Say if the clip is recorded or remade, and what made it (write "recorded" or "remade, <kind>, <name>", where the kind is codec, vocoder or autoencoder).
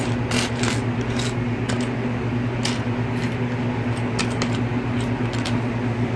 recorded